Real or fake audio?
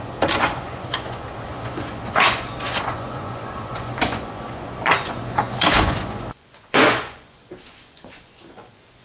fake